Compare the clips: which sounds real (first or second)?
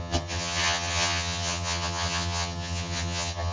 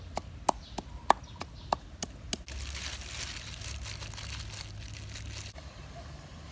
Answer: second